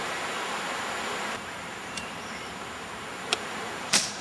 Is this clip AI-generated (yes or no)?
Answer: yes